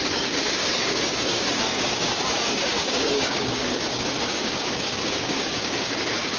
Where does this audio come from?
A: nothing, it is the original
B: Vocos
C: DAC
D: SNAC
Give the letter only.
C